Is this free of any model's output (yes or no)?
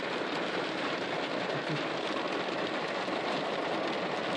yes